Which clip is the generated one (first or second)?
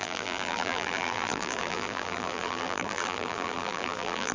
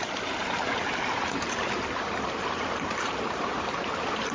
first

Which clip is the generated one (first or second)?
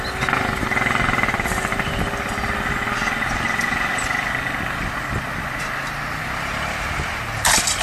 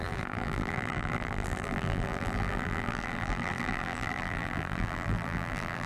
second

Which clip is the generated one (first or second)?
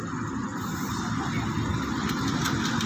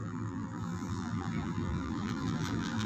second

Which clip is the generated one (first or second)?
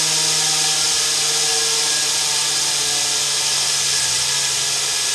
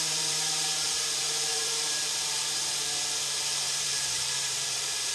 second